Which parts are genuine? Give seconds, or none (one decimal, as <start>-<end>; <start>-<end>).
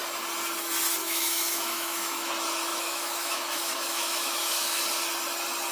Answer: 0.0-1.0; 2.3-2.7; 4.8-5.7